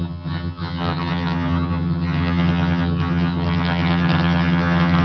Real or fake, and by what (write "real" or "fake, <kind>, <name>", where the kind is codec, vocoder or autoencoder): fake, vocoder, HiFi-GAN